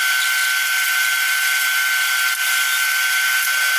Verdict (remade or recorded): remade